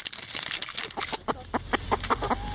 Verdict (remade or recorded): recorded